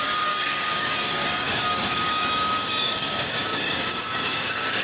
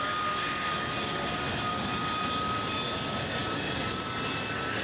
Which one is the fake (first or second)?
first